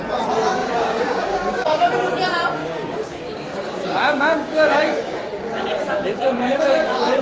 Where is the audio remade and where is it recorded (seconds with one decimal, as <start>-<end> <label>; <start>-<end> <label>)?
0.0-0.6 recorded; 0.6-1.9 remade; 1.9-2.6 recorded; 2.6-7.2 remade